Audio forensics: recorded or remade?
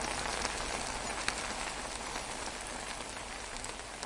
recorded